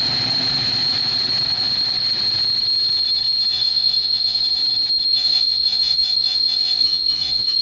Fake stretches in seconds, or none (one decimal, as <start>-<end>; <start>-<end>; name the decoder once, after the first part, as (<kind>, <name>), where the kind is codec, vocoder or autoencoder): 3.5-4.4 (vocoder, Vocos); 5.1-7.6